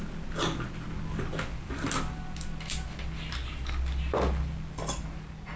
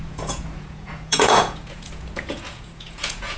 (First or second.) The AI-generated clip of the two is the second